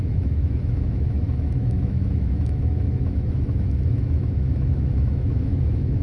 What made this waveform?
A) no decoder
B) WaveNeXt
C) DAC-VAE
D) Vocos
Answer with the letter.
C